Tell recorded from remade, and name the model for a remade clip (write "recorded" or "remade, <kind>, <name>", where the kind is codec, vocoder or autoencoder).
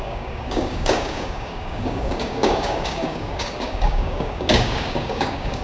remade, codec, DAC